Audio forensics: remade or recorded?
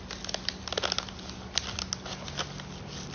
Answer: recorded